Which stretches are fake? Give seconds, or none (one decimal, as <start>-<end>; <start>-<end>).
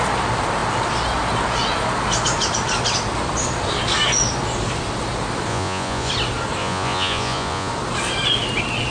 5.5-6.1; 6.6-7.7